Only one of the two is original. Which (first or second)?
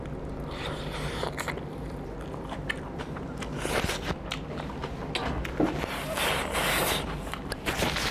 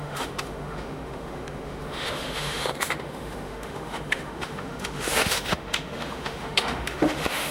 first